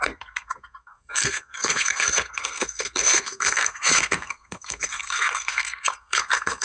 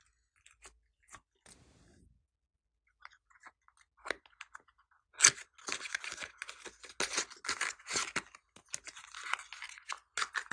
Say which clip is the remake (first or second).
first